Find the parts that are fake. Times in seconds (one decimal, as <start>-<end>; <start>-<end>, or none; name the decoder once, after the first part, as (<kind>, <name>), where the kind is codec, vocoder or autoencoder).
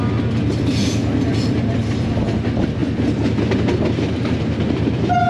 none